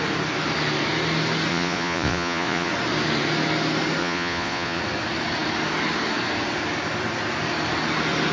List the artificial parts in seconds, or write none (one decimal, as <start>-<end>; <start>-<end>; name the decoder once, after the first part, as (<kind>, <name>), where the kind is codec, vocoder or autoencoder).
1.5-2.7 (vocoder, Vocos); 4.0-4.8